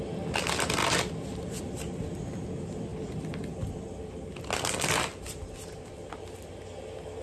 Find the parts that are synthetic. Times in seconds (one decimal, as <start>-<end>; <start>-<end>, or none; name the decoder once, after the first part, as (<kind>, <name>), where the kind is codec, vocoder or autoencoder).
0.8-1.6 (vocoder, BigVGAN v2)